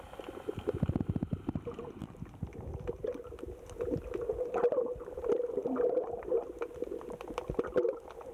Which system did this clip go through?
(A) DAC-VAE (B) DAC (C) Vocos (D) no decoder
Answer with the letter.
D